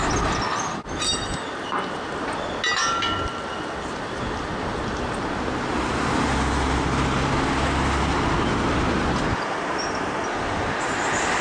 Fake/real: real